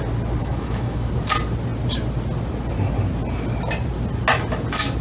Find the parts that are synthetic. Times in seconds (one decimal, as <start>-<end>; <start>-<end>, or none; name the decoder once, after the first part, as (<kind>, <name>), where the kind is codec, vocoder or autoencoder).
0.4-1.1 (autoencoder, DAC-VAE)